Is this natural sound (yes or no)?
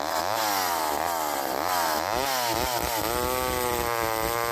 yes